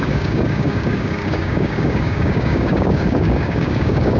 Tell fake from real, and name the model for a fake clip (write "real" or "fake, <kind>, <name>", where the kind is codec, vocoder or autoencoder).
fake, codec, DAC